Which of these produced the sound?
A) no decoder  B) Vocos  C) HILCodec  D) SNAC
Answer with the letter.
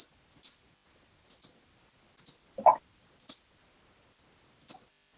A